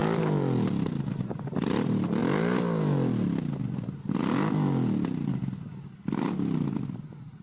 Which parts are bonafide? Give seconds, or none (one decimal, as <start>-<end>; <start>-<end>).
0.0-7.4